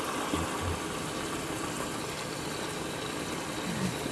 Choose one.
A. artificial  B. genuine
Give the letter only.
B